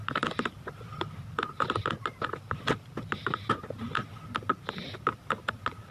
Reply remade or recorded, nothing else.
recorded